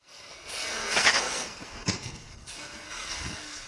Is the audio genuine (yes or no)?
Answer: no